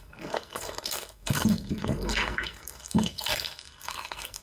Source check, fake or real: fake